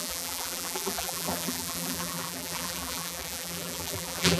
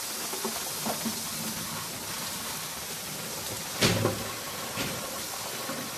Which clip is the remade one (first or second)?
first